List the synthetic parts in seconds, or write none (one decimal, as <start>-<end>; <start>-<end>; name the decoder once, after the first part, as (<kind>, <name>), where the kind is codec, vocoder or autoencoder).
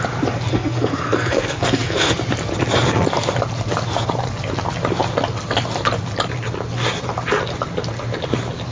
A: 0.5-2.1 (codec, SNAC)